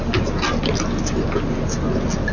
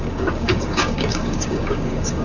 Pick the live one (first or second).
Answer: first